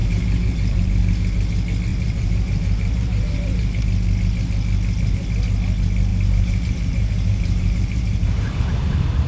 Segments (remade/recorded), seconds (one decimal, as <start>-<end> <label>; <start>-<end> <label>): 0.0-1.0 remade; 1.0-1.9 recorded; 1.9-3.8 remade; 3.8-6.1 recorded; 6.1-9.3 remade